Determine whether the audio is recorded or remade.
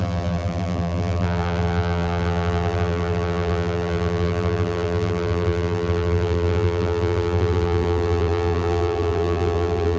remade